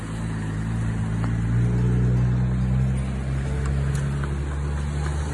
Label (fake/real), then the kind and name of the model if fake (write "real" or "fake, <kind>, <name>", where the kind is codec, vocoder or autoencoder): real